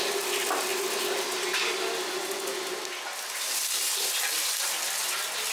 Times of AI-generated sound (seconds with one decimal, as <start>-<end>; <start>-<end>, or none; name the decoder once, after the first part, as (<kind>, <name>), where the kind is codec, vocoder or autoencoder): none